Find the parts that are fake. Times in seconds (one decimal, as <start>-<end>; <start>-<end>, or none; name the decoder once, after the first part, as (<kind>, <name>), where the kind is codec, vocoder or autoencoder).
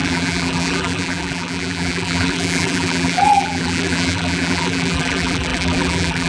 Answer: 0.0-6.3 (vocoder, BigVGAN v2)